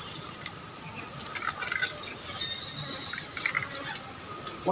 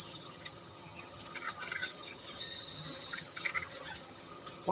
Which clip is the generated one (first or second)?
second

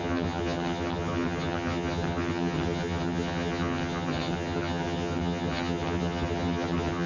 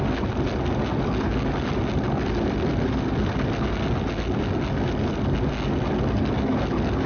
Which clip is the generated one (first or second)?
first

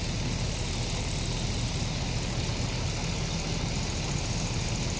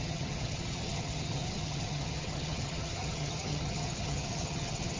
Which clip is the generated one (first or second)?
second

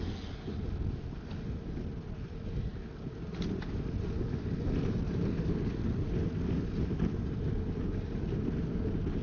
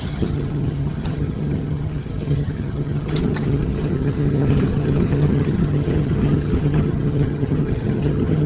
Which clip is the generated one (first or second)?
second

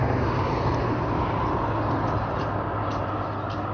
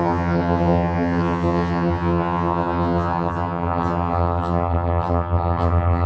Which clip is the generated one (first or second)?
second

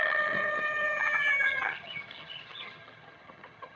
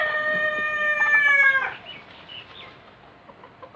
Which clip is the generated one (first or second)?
first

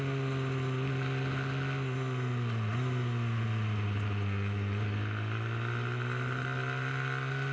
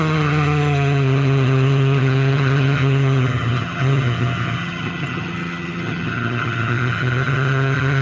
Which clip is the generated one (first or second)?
second